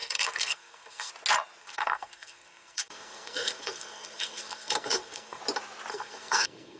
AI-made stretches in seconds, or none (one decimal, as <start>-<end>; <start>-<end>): 0.0-1.1; 1.6-5.4; 5.9-6.8